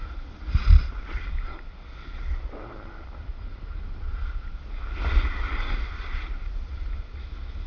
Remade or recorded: recorded